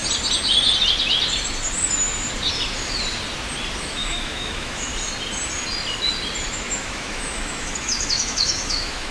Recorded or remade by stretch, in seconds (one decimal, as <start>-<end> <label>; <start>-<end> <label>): 0.0-3.8 recorded; 3.8-4.9 remade; 4.9-6.5 recorded; 6.5-9.1 remade